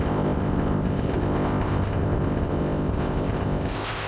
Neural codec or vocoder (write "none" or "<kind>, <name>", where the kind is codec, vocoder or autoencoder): codec, ZipCodec